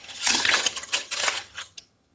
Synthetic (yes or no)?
yes